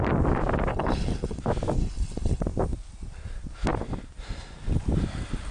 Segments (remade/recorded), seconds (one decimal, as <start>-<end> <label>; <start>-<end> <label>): 0.0-0.7 recorded; 0.7-1.4 remade; 1.4-1.8 recorded; 1.8-2.4 remade; 2.4-5.5 recorded